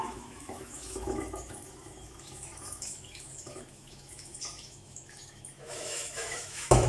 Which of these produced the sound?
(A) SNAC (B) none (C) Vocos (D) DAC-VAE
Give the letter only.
D